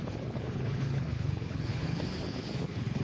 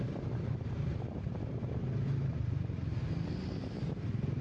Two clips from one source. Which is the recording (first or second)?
second